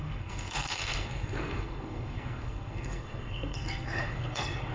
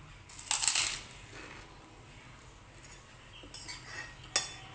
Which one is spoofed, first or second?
first